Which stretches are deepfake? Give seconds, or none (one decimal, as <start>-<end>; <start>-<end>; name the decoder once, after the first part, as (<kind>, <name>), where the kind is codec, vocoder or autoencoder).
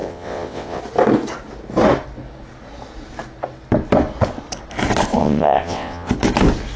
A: 0.0-0.8 (vocoder, WaveNeXt); 5.2-6.1